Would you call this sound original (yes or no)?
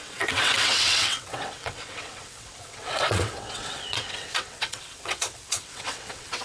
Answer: no